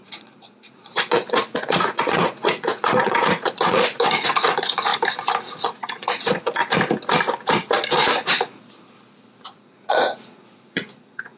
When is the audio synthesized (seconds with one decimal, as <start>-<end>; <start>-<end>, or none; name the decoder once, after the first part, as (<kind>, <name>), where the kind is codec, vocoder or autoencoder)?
0.0-4.9 (vocoder, Vocos); 5.4-6.6; 9.5-11.4